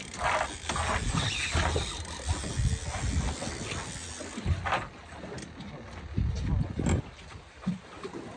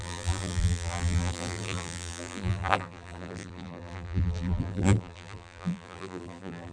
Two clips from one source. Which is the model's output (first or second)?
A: second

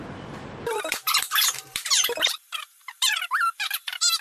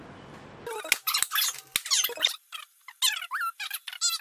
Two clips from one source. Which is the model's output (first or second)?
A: first